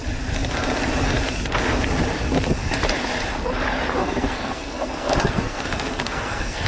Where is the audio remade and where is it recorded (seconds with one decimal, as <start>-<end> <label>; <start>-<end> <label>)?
0.0-4.0 recorded; 4.0-6.7 remade

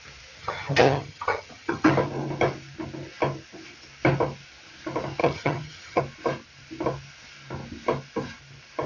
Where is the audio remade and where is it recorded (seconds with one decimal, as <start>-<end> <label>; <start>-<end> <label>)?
0.0-0.4 recorded; 0.4-1.9 remade; 1.9-5.2 recorded; 5.2-6.0 remade; 6.0-8.9 recorded

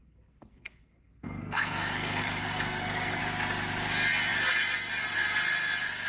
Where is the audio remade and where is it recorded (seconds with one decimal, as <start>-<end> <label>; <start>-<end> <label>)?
0.0-3.2 remade; 3.2-6.1 recorded

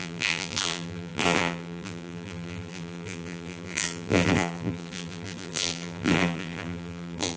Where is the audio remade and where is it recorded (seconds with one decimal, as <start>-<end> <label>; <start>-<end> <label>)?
0.0-7.4 remade

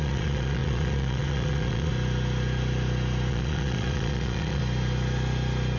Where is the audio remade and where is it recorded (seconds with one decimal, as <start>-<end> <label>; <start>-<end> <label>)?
0.0-1.9 remade; 1.9-3.3 recorded; 3.3-4.6 remade; 4.6-5.8 recorded